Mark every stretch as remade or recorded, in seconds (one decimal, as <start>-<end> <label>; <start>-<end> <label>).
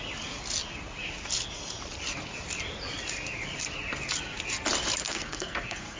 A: 0.0-5.0 recorded; 5.0-6.0 remade